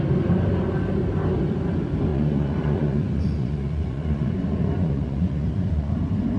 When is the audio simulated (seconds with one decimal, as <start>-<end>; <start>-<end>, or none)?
2.1-5.9